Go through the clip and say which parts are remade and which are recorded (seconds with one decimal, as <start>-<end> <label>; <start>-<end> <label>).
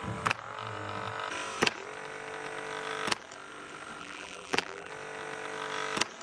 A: 0.0-4.0 recorded; 4.0-4.9 remade; 4.9-6.2 recorded